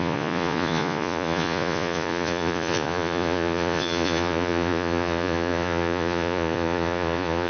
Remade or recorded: remade